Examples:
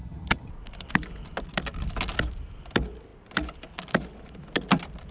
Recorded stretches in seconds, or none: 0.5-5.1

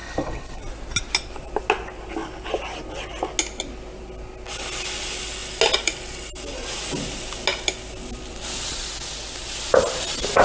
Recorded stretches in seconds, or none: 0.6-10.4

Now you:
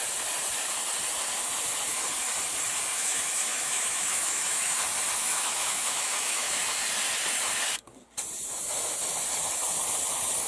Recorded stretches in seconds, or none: 0.0-2.9; 4.7-5.2; 6.6-10.5

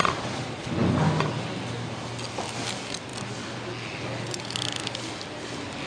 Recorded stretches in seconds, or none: 0.0-5.9